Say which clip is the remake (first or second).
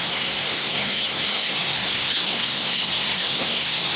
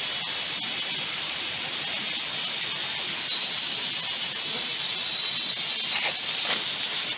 first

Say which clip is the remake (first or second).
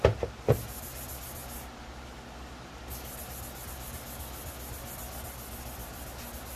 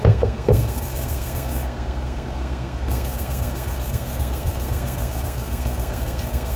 second